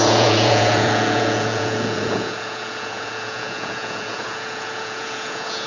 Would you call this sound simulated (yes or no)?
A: yes